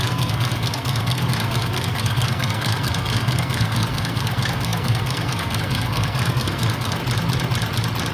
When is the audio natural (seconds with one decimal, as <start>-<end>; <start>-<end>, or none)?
7.0-8.1